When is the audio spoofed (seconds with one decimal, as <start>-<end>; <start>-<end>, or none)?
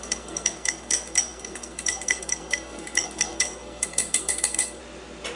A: 0.0-4.8